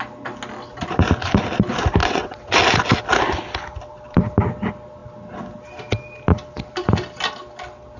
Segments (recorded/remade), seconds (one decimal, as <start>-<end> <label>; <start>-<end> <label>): 0.0-2.0 recorded; 2.0-2.6 remade; 2.6-8.0 recorded